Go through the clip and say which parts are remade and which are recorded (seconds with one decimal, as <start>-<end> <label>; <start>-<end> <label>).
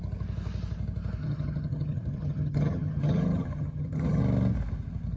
0.0-1.2 recorded; 1.2-4.2 remade; 4.2-5.2 recorded